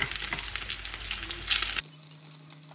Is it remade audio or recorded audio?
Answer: recorded